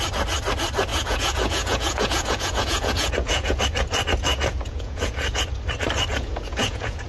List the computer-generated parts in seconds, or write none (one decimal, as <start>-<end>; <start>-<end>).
0.9-3.6; 4.3-5.4; 6.1-7.1